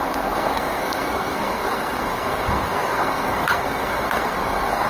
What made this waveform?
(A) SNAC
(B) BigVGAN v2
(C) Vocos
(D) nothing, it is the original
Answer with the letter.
A